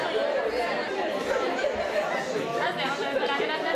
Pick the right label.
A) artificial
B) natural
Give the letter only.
B